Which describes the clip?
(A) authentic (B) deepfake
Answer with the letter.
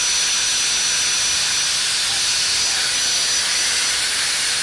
A